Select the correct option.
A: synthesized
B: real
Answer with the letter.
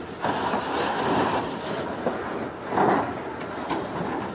B